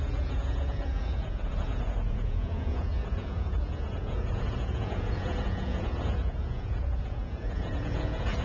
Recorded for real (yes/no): no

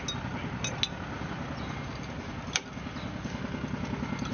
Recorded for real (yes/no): yes